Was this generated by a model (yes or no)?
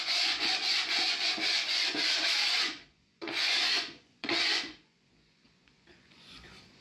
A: yes